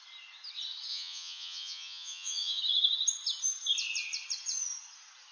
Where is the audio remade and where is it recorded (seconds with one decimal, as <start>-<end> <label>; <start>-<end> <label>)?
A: 0.0-0.9 recorded; 0.9-2.6 remade; 2.6-5.3 recorded